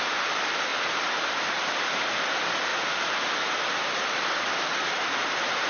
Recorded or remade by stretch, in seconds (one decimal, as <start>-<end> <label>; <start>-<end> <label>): 0.0-0.7 remade; 0.7-2.0 recorded; 2.0-2.7 remade; 2.7-3.9 recorded; 3.9-5.7 remade